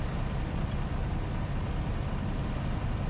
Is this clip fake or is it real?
real